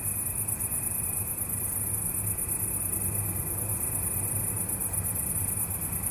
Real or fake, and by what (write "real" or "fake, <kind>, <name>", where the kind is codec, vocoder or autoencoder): real